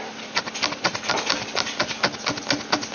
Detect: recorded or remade recorded